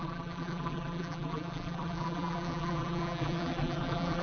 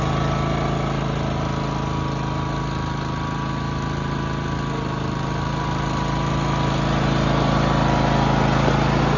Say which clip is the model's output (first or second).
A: first